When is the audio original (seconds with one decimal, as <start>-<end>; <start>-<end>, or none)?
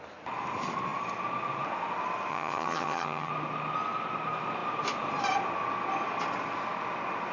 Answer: 0.0-2.3; 3.3-7.3